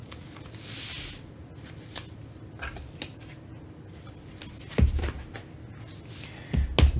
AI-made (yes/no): no